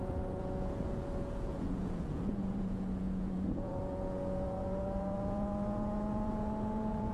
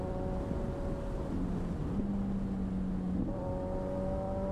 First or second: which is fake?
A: first